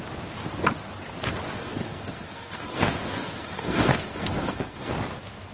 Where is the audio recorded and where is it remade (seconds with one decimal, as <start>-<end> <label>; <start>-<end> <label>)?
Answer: 0.0-1.6 recorded; 1.6-4.9 remade; 4.9-5.5 recorded